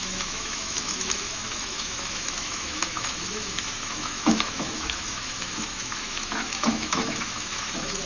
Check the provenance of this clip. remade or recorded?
remade